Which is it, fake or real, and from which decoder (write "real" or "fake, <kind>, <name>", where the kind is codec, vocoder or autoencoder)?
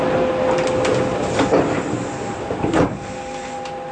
real